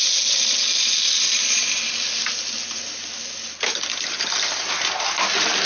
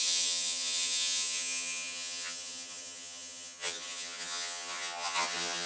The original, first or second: first